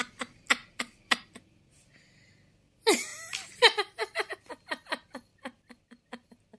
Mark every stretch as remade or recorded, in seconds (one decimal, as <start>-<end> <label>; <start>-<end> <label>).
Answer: 0.0-0.6 recorded; 0.6-1.6 remade; 1.6-5.3 recorded; 5.3-5.8 remade; 5.8-6.6 recorded

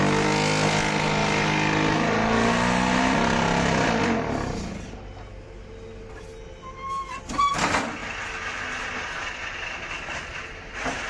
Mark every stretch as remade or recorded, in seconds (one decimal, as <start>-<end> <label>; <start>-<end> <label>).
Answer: 0.0-11.1 recorded

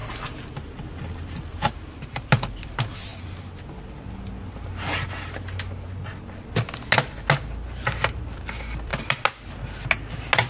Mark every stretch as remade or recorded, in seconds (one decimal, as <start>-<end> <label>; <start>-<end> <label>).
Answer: 0.0-1.4 recorded; 1.4-3.1 remade; 3.1-8.2 recorded; 8.2-8.9 remade; 8.9-10.5 recorded

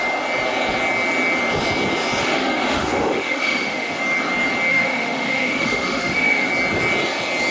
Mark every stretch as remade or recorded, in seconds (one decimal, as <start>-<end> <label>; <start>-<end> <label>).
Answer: 0.0-2.2 recorded; 2.2-4.0 remade; 4.0-4.7 recorded; 4.7-6.5 remade; 6.5-7.5 recorded

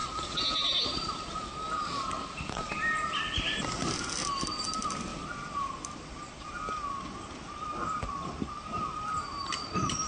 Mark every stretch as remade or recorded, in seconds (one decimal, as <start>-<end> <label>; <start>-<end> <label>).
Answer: 0.0-10.1 recorded

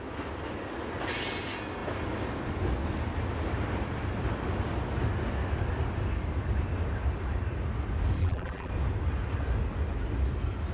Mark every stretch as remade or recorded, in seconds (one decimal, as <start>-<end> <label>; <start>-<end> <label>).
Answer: 0.0-8.2 recorded; 8.2-8.7 remade; 8.7-10.7 recorded

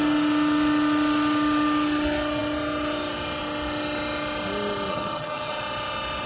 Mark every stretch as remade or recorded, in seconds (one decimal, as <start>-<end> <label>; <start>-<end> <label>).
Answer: 0.0-4.9 recorded; 4.9-5.6 remade; 5.6-6.3 recorded

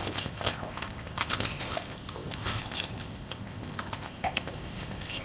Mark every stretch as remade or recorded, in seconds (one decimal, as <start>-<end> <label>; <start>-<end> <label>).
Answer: 0.0-5.2 remade